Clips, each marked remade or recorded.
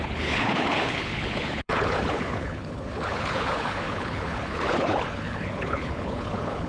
remade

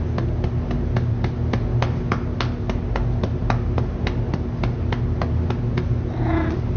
recorded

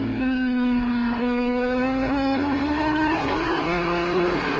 remade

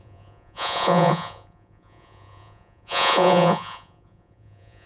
remade